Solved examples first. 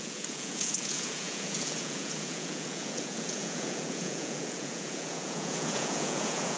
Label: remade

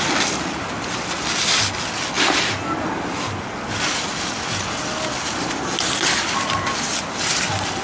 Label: recorded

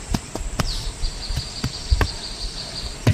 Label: remade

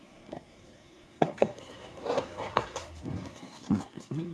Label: remade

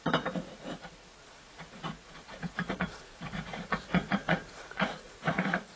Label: remade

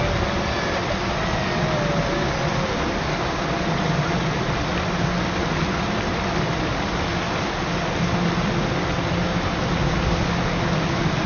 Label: recorded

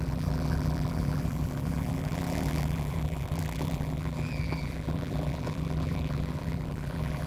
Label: remade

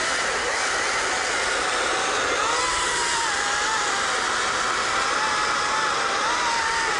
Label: recorded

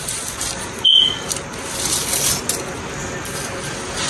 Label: recorded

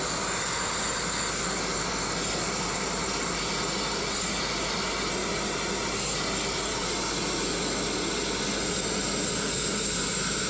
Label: recorded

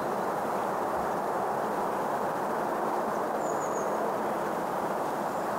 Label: remade